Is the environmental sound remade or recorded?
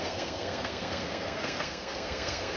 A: remade